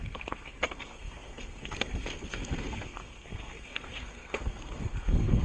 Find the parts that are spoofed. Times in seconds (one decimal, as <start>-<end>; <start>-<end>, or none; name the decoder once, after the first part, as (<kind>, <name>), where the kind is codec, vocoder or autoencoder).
0.0-5.4 (codec, SNAC)